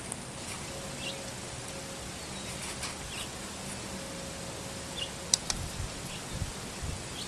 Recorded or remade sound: recorded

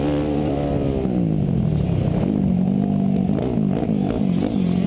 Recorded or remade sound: recorded